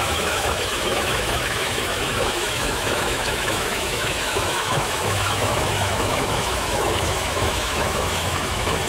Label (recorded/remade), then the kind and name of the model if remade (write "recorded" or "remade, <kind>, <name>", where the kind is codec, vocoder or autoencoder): remade, autoencoder, DAC-VAE